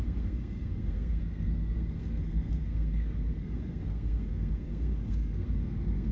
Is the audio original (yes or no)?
no